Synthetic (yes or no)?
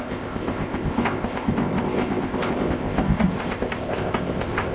yes